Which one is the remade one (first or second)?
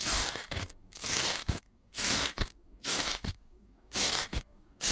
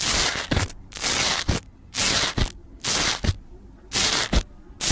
first